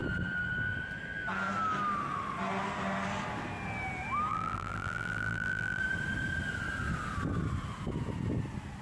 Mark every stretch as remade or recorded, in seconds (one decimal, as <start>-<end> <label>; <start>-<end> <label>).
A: 0.0-4.3 recorded; 4.3-5.8 remade; 5.8-8.8 recorded